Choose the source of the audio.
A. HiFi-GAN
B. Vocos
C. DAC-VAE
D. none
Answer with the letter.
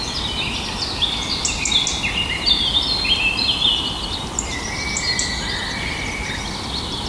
D